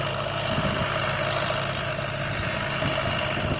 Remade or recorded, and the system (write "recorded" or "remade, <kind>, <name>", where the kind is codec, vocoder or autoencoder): recorded